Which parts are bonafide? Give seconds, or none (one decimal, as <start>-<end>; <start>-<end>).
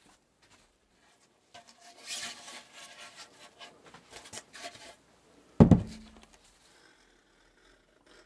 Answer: 0.0-8.3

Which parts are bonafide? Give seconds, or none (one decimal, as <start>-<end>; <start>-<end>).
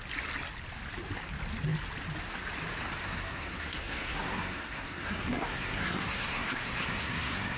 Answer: 0.0-3.0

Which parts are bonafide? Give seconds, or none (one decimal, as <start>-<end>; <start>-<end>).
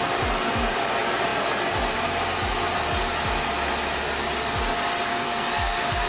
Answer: 0.0-5.1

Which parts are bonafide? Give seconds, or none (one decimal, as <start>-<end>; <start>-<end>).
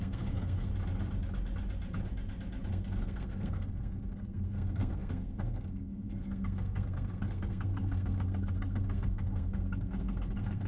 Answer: 0.7-2.7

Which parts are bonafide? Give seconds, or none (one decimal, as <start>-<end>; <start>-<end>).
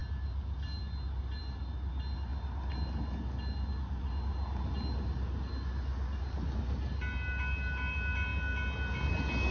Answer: 0.0-9.5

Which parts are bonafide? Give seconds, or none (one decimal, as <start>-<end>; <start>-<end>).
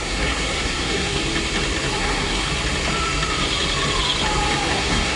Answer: 1.2-2.0; 2.5-4.7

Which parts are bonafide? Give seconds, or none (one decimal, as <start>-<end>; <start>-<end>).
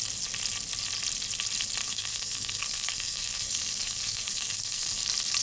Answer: 0.0-1.8; 5.0-5.4